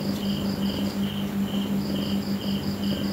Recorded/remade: recorded